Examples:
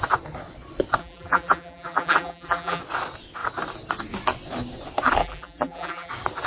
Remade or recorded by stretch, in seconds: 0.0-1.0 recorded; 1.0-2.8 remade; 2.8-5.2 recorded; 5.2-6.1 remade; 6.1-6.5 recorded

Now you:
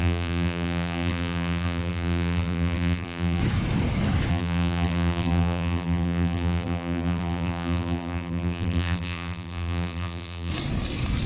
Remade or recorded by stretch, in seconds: 0.0-3.4 remade; 3.4-4.3 recorded; 4.3-10.5 remade; 10.5-11.3 recorded

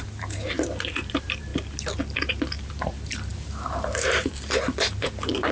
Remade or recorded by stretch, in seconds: 0.0-1.5 remade; 1.5-2.6 recorded; 2.6-5.5 remade

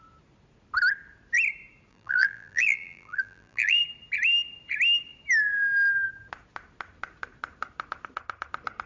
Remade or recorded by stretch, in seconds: 0.0-1.9 recorded; 1.9-3.8 remade; 3.8-8.9 recorded

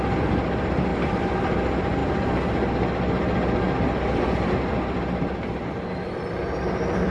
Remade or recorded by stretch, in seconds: 0.0-2.0 remade; 2.0-6.3 recorded; 6.3-7.1 remade

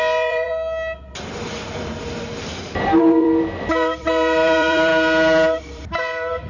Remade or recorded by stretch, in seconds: 0.0-0.5 remade; 0.5-3.0 recorded; 3.0-4.9 remade; 4.9-5.6 recorded; 5.6-6.5 remade

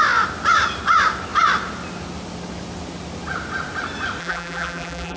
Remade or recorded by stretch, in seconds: 0.0-4.2 recorded; 4.2-5.2 remade